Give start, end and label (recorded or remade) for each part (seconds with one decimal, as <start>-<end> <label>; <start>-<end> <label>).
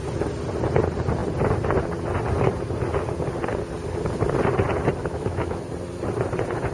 0.0-5.0 recorded; 5.0-5.6 remade; 5.6-6.7 recorded